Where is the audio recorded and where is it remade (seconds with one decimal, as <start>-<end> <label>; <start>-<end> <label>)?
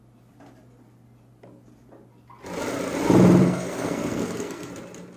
0.0-3.4 recorded; 3.4-4.7 remade; 4.7-5.2 recorded